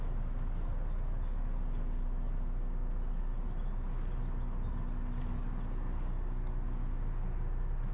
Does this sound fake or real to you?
real